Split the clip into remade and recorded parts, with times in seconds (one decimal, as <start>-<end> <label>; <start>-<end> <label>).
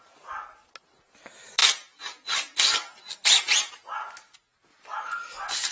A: 0.0-5.7 recorded